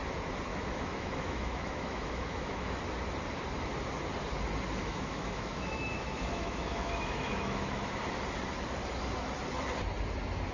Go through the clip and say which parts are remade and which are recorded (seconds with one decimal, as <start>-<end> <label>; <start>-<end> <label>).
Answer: 0.0-0.5 recorded; 0.5-2.8 remade; 2.8-4.8 recorded; 4.8-8.0 remade; 8.0-10.5 recorded